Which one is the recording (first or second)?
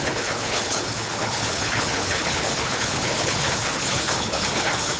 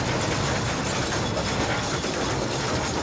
second